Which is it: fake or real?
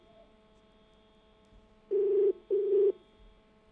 real